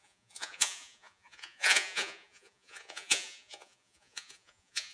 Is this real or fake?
fake